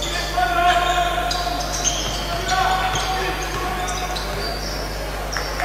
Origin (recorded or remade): recorded